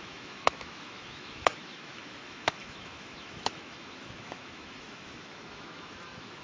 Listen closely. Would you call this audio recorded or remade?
remade